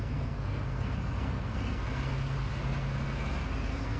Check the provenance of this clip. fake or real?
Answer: fake